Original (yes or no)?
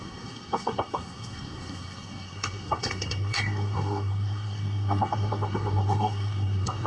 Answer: no